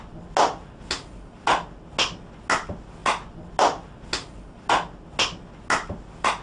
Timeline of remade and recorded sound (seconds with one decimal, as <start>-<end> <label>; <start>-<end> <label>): 0.0-6.4 recorded